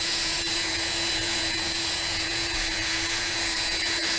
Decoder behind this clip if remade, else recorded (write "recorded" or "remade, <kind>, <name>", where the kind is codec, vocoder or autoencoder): remade, vocoder, Vocos